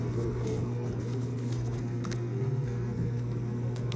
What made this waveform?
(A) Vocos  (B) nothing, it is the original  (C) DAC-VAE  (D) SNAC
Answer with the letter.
D